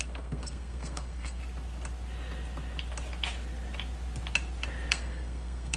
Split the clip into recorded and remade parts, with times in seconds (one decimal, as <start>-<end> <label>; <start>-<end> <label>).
0.0-1.4 remade; 1.4-4.9 recorded; 4.9-5.8 remade

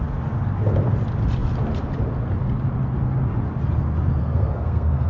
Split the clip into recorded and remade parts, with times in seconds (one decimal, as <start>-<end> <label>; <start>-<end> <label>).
0.0-4.2 recorded; 4.2-5.1 remade

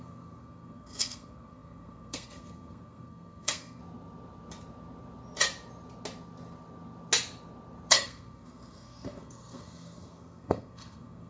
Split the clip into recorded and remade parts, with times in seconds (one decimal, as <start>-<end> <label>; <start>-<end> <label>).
0.0-3.8 remade; 3.8-7.9 recorded; 7.9-11.3 remade

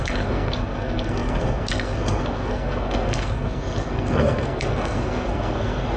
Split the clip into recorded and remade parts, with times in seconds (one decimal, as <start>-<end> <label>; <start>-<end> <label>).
0.0-6.0 remade

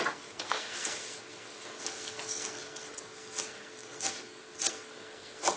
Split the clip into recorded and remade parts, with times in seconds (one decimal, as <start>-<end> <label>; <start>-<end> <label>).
0.0-5.6 remade